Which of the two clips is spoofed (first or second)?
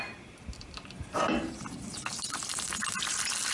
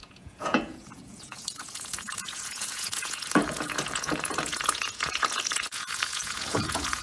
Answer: second